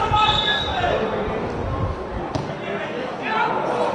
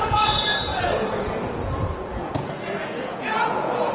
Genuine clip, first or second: first